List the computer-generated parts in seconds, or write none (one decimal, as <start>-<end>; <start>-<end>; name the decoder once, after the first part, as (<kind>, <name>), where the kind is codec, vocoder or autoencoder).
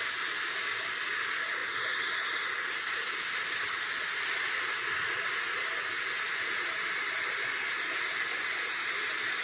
none